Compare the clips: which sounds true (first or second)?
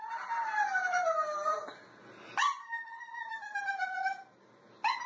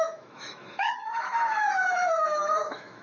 first